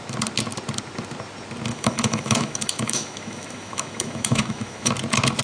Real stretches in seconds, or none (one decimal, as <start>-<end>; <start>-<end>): 0.0-1.7; 4.9-5.4